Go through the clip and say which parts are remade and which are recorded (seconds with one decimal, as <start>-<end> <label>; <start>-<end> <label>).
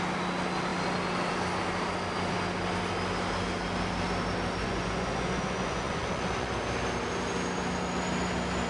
0.0-4.6 recorded; 4.6-6.5 remade; 6.5-8.7 recorded